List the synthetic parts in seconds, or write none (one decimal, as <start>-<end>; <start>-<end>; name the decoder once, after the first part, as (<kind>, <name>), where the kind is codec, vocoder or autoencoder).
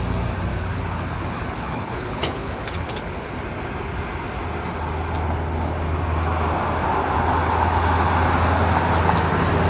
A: 0.5-3.3 (codec, HILCodec)